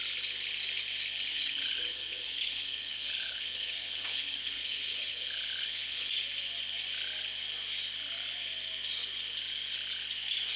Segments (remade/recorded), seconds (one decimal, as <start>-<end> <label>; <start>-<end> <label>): 0.0-1.3 recorded; 1.3-6.1 remade; 6.1-10.6 recorded

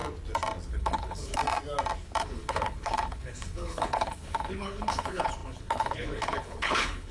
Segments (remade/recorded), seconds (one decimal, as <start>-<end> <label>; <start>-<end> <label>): 0.0-0.7 recorded; 0.7-1.4 remade; 1.4-2.2 recorded; 2.2-7.1 remade